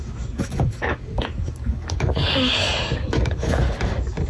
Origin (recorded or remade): remade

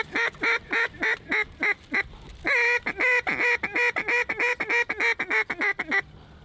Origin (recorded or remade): recorded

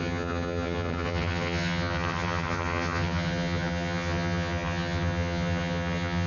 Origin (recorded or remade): remade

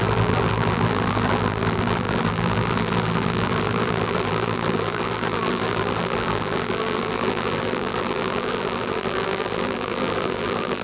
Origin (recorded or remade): remade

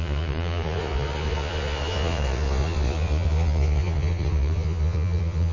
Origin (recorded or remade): remade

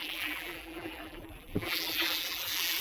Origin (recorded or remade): remade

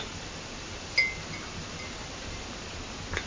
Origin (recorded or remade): recorded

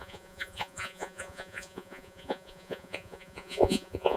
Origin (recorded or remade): remade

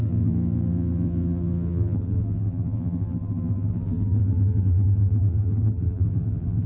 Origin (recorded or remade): remade